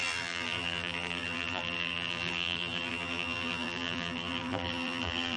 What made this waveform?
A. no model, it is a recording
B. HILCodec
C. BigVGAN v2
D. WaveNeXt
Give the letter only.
C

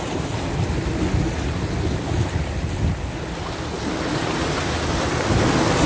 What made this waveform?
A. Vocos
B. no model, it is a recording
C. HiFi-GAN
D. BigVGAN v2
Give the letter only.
B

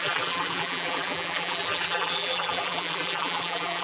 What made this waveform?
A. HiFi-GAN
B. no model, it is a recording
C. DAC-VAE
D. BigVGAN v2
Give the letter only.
D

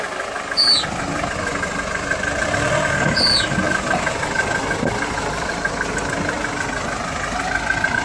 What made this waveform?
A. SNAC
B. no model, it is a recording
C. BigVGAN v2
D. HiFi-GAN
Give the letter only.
B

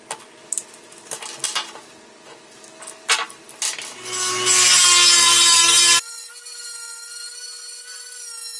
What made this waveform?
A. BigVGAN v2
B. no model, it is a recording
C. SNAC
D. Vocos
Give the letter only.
B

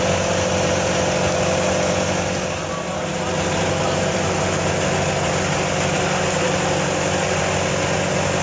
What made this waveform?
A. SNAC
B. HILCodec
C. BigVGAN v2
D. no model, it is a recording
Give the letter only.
D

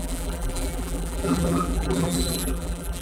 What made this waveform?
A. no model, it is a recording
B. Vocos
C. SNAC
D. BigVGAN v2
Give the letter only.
D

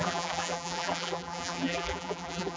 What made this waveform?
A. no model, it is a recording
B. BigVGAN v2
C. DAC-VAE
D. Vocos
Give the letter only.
B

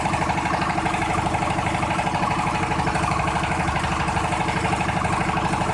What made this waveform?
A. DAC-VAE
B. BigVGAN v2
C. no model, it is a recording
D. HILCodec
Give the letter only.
B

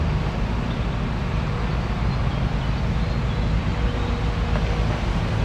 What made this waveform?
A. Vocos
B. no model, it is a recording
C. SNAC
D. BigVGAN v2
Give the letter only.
B